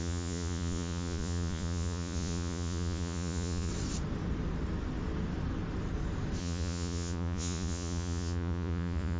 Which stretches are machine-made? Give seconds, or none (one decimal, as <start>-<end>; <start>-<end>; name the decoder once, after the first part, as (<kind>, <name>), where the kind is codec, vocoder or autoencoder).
0.0-3.7 (vocoder, Vocos); 6.4-9.2